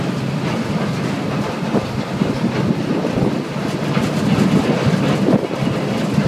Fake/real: real